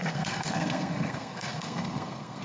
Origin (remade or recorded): remade